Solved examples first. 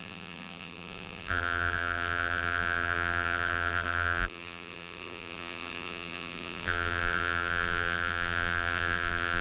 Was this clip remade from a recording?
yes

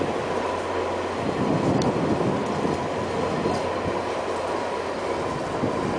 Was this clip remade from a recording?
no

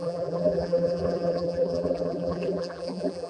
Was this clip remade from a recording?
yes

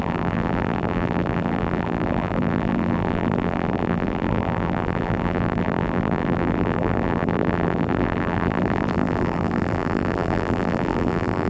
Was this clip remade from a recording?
yes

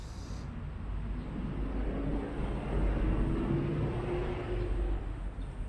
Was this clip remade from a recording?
no